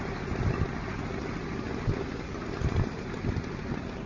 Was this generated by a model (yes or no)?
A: no